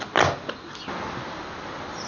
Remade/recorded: recorded